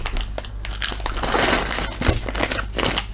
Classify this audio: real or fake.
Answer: real